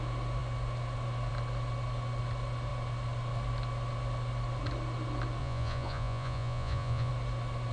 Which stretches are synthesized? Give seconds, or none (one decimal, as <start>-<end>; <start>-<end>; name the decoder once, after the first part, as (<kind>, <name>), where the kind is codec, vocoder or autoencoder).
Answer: 5.4-7.1 (vocoder, Vocos)

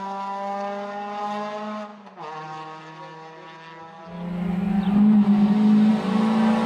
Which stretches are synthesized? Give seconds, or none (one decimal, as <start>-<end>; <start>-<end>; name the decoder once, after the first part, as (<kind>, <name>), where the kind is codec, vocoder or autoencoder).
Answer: none

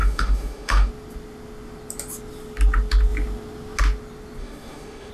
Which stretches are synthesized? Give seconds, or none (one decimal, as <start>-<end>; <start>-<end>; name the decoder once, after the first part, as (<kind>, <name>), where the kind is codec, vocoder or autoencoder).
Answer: 0.0-0.9 (autoencoder, DAC-VAE); 4.4-5.1

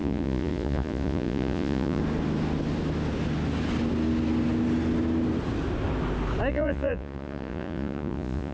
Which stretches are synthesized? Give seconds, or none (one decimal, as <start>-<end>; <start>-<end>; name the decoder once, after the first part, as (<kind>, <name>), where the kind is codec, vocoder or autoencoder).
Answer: 0.0-2.0 (vocoder, Vocos); 6.5-8.5

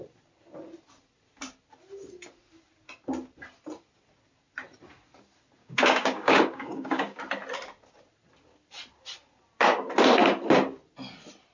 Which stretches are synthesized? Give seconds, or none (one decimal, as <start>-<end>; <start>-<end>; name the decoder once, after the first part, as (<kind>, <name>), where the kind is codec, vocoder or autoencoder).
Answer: 5.6-7.2 (codec, DAC)